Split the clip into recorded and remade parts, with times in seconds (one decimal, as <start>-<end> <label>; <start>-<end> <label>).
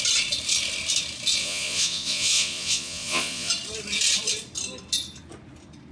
0.0-1.4 recorded; 1.4-3.5 remade; 3.5-5.9 recorded